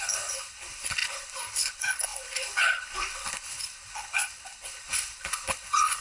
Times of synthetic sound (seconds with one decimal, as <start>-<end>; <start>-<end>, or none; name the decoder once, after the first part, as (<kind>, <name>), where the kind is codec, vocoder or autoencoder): 0.0-6.0 (codec, HILCodec)